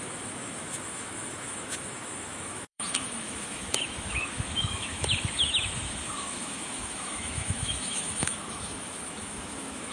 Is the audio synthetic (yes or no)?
yes